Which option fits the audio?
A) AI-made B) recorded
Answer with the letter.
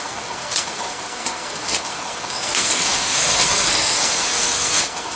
A